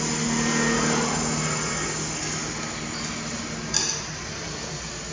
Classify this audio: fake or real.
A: real